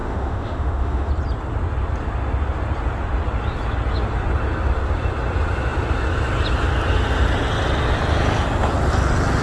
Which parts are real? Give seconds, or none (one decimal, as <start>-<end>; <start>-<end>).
1.1-9.4